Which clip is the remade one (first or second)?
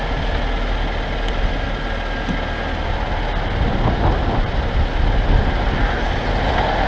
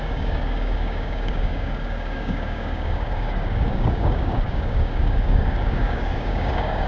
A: second